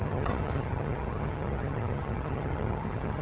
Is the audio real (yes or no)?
no